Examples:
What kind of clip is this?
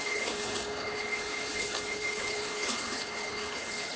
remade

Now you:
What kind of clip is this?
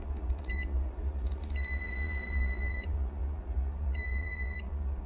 remade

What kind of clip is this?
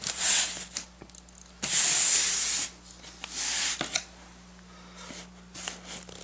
recorded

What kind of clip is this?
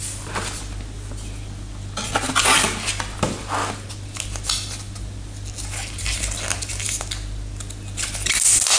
recorded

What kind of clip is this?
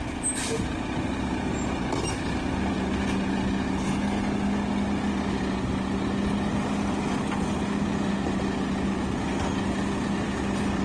recorded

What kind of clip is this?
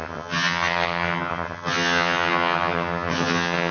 remade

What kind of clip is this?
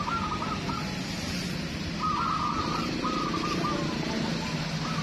recorded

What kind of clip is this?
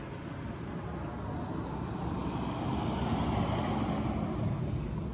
recorded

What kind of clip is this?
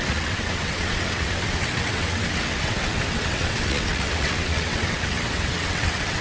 remade